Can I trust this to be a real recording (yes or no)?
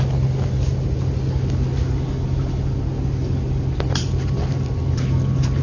yes